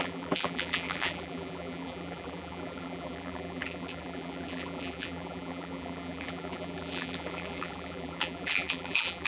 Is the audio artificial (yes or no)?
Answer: yes